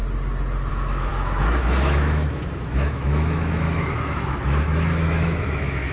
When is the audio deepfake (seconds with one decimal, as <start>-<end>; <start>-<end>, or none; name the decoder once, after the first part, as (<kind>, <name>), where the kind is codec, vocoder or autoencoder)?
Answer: 0.7-5.9 (autoencoder, DAC-VAE)